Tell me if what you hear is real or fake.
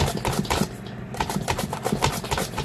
fake